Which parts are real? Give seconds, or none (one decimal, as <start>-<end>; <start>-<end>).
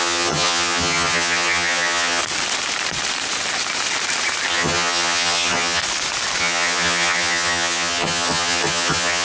2.2-4.5; 5.8-6.4